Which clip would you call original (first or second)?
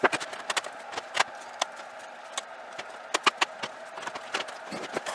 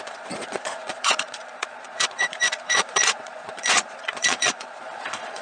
first